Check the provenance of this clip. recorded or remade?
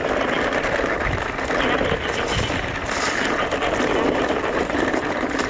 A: recorded